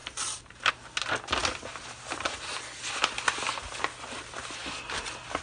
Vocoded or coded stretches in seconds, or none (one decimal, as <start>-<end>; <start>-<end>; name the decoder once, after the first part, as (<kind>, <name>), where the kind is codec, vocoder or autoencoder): 0.0-0.7 (vocoder, BigVGAN v2)